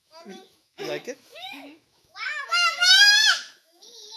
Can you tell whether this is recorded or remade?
remade